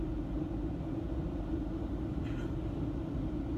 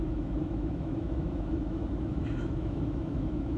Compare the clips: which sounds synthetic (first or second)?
second